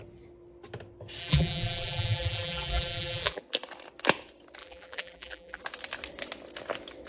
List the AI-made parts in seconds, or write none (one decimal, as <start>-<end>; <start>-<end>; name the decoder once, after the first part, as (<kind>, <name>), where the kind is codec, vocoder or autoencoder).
1.2-3.4 (vocoder, BigVGAN v2); 4.6-5.6